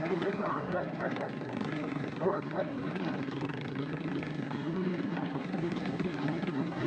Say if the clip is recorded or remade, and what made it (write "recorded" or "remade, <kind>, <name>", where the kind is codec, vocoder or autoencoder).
remade, codec, SNAC